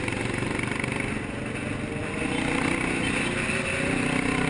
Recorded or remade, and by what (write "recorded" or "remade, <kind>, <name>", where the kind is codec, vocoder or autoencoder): recorded